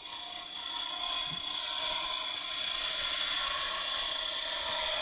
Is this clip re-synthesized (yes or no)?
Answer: yes